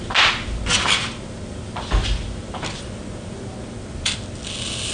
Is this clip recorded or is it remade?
recorded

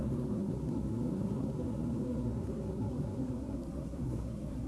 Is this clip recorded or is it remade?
remade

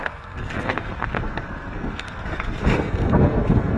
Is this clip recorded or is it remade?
remade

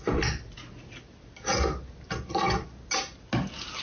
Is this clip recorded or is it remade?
recorded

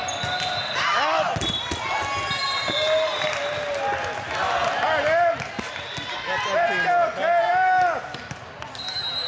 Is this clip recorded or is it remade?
recorded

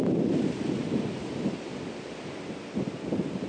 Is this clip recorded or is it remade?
recorded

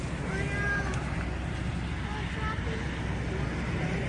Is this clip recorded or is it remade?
recorded